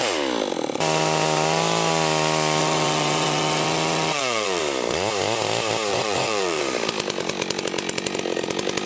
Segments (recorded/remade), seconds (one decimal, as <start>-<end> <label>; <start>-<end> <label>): 0.0-2.6 recorded; 2.6-4.6 remade; 4.6-5.9 recorded; 5.9-6.6 remade; 6.6-8.9 recorded